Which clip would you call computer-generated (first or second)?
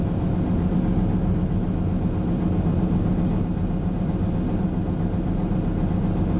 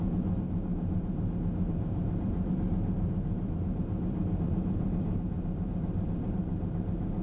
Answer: second